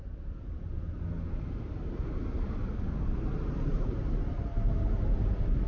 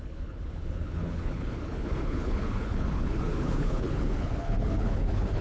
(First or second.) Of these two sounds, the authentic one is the first